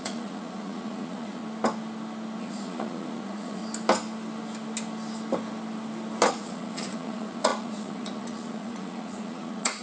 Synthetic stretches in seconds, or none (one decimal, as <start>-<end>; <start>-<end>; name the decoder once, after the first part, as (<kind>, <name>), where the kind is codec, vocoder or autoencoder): 0.0-1.4 (vocoder, Vocos); 2.4-3.6; 6.3-9.8